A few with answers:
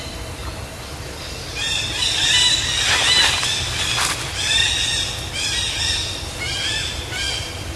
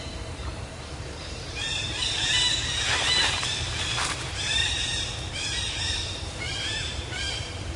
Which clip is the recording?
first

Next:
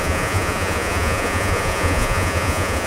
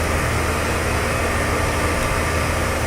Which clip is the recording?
second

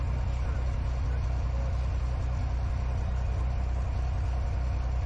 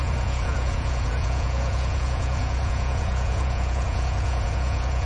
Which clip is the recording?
first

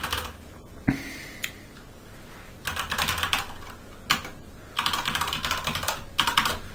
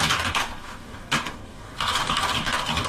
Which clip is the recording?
first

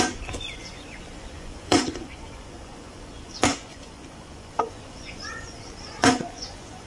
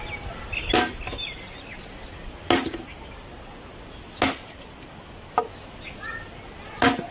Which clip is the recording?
second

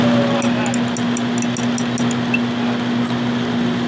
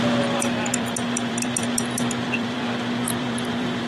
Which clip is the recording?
first